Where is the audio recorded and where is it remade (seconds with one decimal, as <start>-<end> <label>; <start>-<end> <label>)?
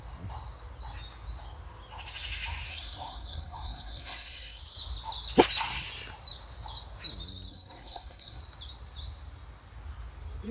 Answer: 0.0-2.7 recorded; 2.7-4.6 remade; 4.6-7.5 recorded; 7.5-8.4 remade; 8.4-10.5 recorded